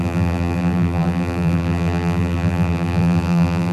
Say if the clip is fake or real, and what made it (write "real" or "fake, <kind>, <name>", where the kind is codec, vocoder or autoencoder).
fake, vocoder, BigVGAN v2